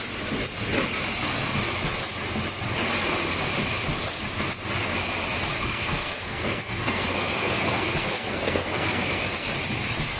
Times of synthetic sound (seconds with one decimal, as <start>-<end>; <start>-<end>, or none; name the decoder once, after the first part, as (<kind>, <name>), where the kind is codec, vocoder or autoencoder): 5.5-9.5 (codec, SNAC)